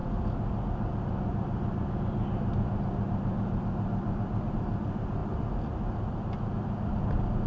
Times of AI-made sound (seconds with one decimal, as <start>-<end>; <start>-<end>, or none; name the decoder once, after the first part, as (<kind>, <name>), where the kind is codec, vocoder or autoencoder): none